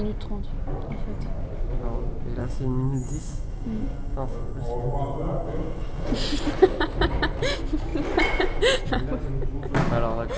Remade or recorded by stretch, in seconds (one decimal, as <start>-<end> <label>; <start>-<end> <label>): 0.0-2.4 recorded; 2.4-6.1 remade; 6.1-10.4 recorded